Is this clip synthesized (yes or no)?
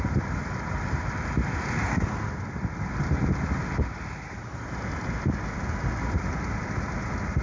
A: no